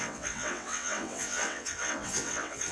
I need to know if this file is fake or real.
fake